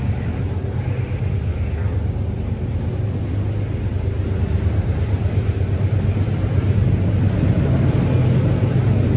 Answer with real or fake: real